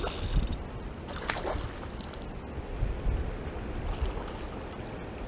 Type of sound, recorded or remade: recorded